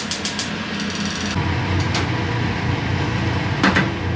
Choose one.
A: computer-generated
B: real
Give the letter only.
B